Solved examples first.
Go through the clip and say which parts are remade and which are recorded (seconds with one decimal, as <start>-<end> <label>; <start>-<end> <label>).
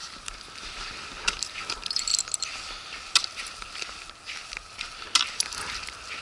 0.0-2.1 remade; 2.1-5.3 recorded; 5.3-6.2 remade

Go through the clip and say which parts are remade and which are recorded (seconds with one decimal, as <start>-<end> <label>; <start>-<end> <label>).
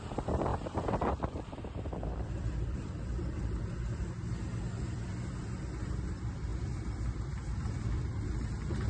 0.0-0.5 recorded; 0.5-3.6 remade; 3.6-8.9 recorded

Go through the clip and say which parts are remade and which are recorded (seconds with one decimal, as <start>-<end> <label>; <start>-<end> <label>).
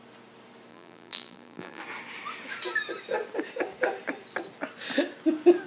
0.0-0.7 recorded; 0.7-1.8 remade; 1.8-5.7 recorded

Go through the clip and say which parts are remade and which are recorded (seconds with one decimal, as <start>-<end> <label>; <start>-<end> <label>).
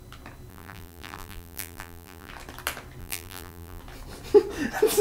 0.0-0.5 recorded; 0.5-2.3 remade; 2.3-3.0 recorded; 3.0-3.8 remade; 3.8-5.0 recorded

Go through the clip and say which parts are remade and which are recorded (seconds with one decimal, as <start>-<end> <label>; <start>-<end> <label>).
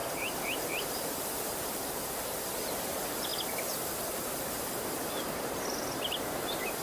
0.0-3.3 remade; 3.3-6.2 recorded; 6.2-6.8 remade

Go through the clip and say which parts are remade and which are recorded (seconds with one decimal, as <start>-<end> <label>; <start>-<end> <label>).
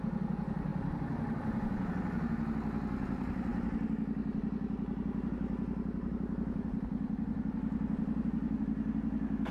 0.0-9.5 recorded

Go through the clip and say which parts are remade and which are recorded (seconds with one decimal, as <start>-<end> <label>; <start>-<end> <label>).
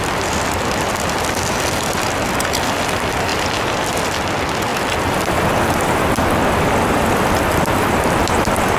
0.0-4.7 recorded; 4.7-8.8 remade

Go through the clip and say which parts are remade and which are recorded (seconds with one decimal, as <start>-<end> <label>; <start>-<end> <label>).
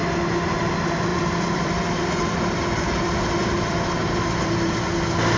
0.0-1.1 recorded; 1.1-2.4 remade; 2.4-3.4 recorded; 3.4-4.8 remade; 4.8-5.4 recorded